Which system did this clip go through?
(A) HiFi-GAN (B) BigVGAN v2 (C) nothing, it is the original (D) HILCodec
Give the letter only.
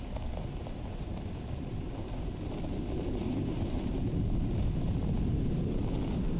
C